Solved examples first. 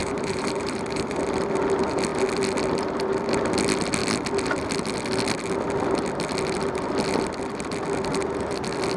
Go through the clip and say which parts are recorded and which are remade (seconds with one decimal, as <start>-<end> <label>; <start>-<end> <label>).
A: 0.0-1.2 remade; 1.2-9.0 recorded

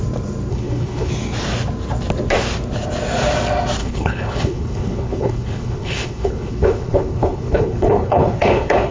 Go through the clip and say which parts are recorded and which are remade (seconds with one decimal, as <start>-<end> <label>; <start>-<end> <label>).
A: 0.0-0.5 recorded; 0.5-1.1 remade; 1.1-3.8 recorded; 3.8-8.9 remade

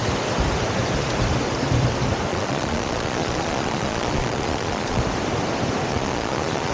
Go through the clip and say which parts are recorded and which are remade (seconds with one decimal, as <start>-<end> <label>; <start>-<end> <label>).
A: 0.0-2.3 recorded; 2.3-5.0 remade; 5.0-5.9 recorded; 5.9-6.7 remade